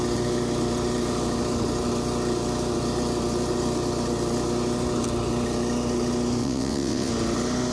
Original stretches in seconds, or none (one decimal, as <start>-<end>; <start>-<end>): 0.0-6.4; 7.1-7.7